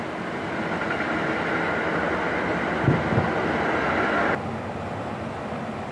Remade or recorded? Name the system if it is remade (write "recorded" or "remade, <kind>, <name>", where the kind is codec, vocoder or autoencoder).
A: recorded